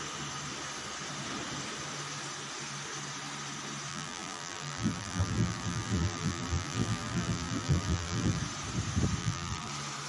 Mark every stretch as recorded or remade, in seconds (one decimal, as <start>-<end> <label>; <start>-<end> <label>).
0.0-3.9 recorded; 3.9-8.4 remade; 8.4-9.2 recorded; 9.2-9.7 remade; 9.7-10.1 recorded